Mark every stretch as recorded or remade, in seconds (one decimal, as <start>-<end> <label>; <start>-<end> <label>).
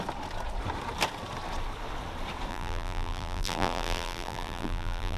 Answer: 0.0-2.5 recorded; 2.5-5.2 remade